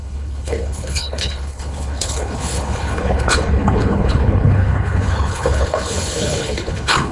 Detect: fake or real fake